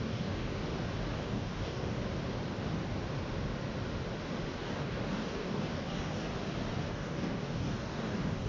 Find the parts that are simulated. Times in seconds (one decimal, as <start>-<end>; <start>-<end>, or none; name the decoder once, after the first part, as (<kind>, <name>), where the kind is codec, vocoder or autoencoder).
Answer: 0.0-0.6 (codec, DAC); 1.1-2.0; 4.6-6.3; 6.9-8.5

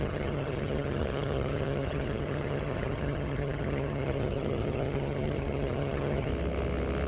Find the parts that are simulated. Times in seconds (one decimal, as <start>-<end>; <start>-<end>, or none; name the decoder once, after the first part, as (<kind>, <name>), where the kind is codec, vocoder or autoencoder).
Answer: 0.0-6.3 (vocoder, HiFi-GAN)

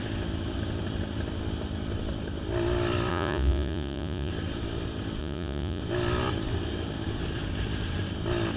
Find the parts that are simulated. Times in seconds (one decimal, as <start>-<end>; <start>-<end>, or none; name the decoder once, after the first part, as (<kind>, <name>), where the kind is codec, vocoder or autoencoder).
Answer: 3.1-4.3 (vocoder, Vocos); 5.2-5.8

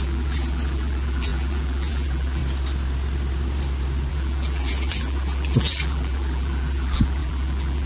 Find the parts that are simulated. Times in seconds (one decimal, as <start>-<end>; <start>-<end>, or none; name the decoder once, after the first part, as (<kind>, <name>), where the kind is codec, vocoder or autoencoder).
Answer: 0.0-2.4 (vocoder, BigVGAN v2); 4.1-7.9

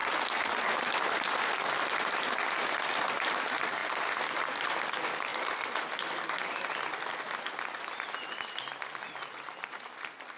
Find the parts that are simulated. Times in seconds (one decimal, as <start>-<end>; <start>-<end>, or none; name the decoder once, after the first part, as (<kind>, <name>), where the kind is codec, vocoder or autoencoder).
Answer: 3.8-4.6 (vocoder, BigVGAN v2); 5.3-7.2

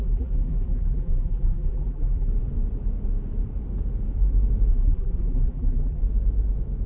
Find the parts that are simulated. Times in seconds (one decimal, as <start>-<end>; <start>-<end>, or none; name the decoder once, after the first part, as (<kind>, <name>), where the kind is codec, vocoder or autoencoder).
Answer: 0.0-2.3 (vocoder, BigVGAN v2); 4.7-6.0